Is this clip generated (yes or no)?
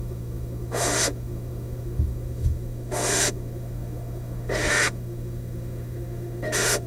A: yes